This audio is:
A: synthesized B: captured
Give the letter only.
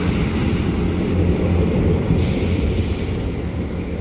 B